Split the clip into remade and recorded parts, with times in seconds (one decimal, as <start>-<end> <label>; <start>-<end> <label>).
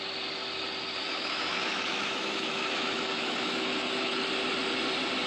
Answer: 0.0-1.0 recorded; 1.0-4.2 remade; 4.2-5.3 recorded